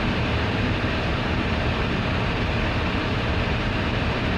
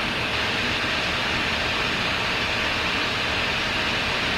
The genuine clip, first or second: second